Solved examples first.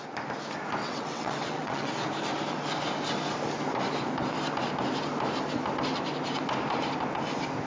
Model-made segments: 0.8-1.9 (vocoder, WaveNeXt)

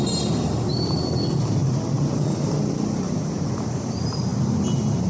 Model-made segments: none

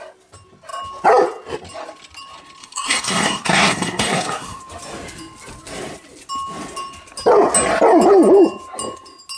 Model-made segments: 2.6-4.6 (codec, SNAC)

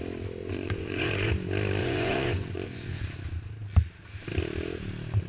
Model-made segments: 0.4-1.3 (vocoder, Vocos); 1.8-3.0

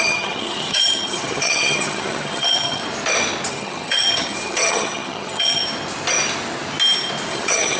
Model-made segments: 0.0-2.8 (vocoder, HiFi-GAN); 3.5-5.6; 7.3-7.8